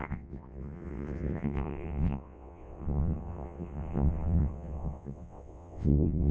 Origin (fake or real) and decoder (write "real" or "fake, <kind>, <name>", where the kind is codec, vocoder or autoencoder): fake, vocoder, WaveNeXt